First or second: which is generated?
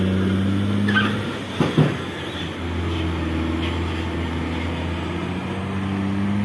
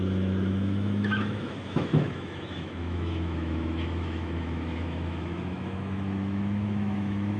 second